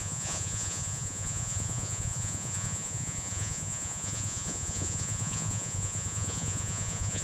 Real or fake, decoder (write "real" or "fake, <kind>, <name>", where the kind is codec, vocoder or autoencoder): fake, vocoder, Vocos